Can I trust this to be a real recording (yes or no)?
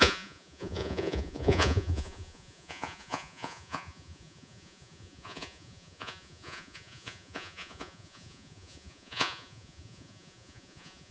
no